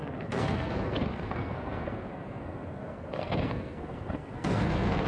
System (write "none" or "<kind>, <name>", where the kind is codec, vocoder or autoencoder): codec, SNAC